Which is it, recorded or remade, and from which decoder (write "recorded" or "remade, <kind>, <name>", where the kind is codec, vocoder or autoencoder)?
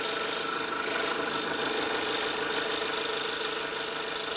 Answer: recorded